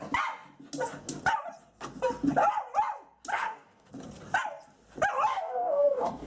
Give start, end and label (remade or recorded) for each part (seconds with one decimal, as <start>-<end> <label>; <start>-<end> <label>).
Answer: 0.0-3.3 recorded; 3.3-3.9 remade; 3.9-5.3 recorded; 5.3-6.3 remade

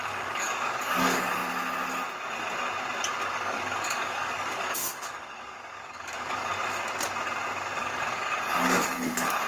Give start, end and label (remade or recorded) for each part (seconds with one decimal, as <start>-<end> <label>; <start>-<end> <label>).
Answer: 0.0-1.4 remade; 1.4-3.2 recorded; 3.2-6.5 remade; 6.5-7.8 recorded; 7.8-9.5 remade

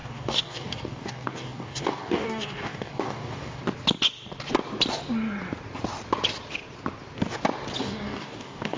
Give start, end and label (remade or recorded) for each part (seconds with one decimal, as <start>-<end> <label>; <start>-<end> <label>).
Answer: 0.0-3.6 remade; 3.6-7.8 recorded; 7.8-8.8 remade

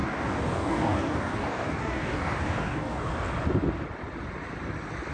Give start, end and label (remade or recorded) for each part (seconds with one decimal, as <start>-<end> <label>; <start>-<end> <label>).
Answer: 0.0-3.1 remade; 3.1-5.1 recorded

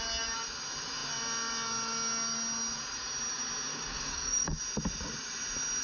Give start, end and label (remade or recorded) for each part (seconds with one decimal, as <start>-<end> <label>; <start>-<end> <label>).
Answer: 0.0-3.7 recorded; 3.7-4.6 remade; 4.6-5.8 recorded

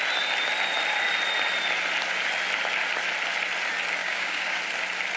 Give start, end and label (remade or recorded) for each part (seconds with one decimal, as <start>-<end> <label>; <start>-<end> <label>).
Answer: 0.0-4.0 recorded; 4.0-4.6 remade; 4.6-5.2 recorded

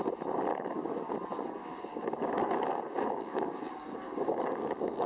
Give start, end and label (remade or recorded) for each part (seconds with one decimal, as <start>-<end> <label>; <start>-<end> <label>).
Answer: 0.0-0.5 recorded; 0.5-1.1 remade; 1.1-1.6 recorded; 1.6-5.1 remade